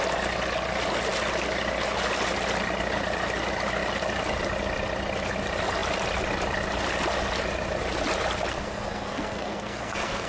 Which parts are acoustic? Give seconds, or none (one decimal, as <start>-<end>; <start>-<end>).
0.0-8.5